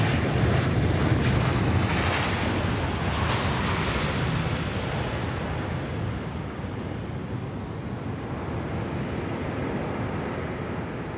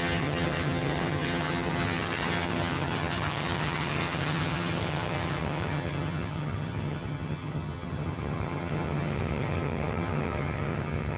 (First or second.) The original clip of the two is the first